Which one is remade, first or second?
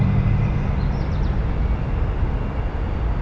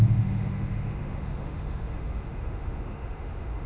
second